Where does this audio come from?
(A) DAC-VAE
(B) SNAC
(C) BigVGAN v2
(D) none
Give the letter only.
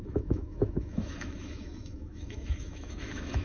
A